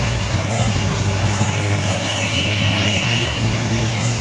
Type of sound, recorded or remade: remade